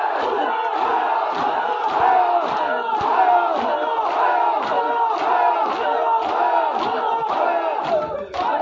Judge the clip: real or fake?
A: real